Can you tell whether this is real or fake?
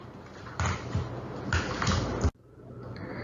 real